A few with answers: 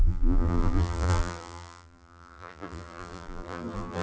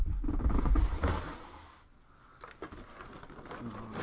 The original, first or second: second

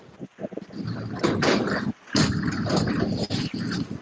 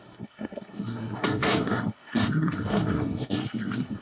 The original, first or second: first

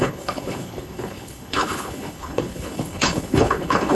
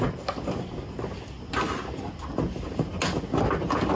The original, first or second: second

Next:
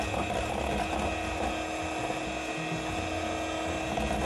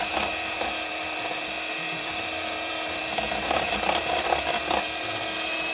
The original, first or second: first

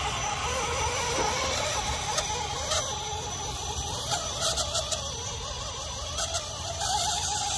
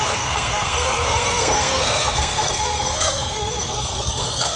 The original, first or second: first